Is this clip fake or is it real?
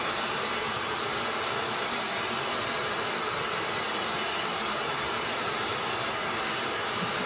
fake